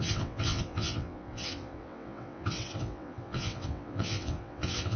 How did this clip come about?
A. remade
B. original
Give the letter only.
A